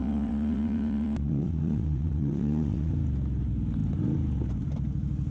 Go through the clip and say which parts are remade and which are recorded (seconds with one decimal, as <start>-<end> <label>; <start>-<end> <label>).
0.0-2.9 remade; 2.9-5.3 recorded